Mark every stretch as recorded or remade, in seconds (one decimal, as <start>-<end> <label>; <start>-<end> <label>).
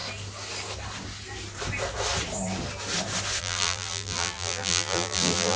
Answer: 0.0-3.4 recorded; 3.4-5.6 remade